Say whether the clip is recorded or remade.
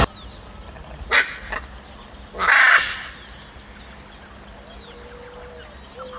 recorded